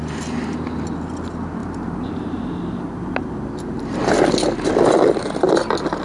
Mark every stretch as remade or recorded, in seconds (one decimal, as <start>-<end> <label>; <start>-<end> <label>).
0.0-1.6 recorded; 1.6-4.3 remade; 4.3-6.0 recorded